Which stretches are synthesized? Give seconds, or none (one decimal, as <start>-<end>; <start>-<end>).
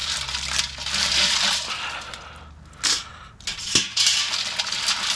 none